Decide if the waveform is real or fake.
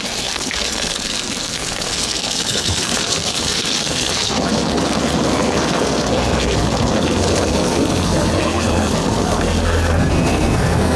fake